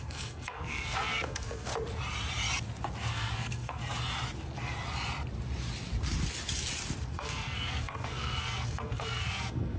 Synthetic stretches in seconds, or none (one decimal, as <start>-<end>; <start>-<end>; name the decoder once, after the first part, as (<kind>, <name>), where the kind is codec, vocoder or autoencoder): 0.0-1.7 (codec, SNAC); 3.1-3.8; 7.1-9.8